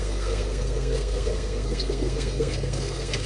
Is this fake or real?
fake